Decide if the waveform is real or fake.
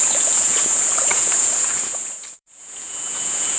fake